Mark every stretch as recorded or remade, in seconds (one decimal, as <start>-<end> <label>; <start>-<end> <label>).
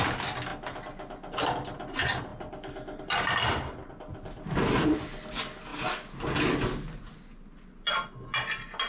0.0-8.9 recorded